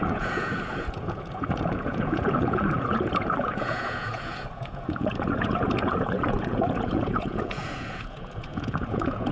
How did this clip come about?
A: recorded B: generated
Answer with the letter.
B